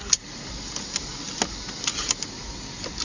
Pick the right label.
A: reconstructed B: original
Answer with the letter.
B